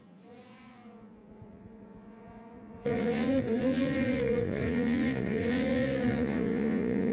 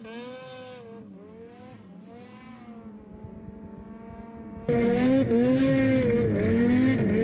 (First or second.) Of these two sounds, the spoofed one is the first